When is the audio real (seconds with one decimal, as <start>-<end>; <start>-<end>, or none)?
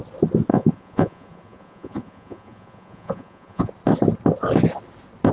0.0-0.5; 3.7-5.3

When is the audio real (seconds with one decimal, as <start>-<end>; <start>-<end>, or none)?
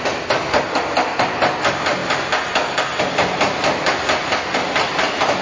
2.0-3.0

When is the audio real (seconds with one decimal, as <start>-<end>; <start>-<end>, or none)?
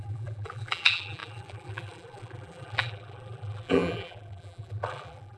none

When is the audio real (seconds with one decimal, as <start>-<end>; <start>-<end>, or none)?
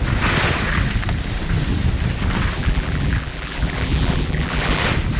0.0-2.6; 4.8-5.2